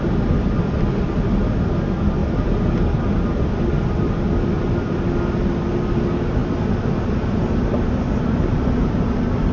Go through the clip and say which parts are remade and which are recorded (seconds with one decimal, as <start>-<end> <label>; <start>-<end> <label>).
0.0-9.5 recorded